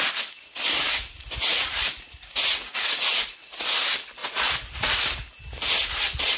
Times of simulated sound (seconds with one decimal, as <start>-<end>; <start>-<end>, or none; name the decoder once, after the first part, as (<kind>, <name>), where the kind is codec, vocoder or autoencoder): 1.5-3.6 (vocoder, Vocos); 4.2-5.0